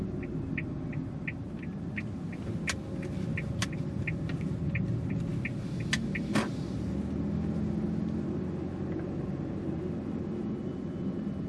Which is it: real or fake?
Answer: real